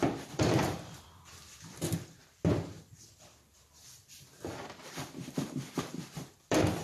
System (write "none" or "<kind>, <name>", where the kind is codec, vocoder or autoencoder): vocoder, BigVGAN v2